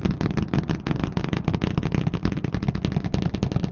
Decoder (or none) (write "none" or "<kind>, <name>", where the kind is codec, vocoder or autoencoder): none